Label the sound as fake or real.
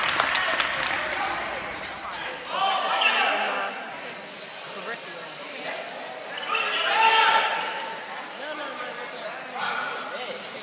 real